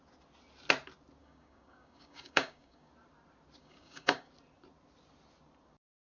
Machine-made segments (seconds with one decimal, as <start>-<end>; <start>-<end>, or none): 1.2-2.9; 3.6-4.3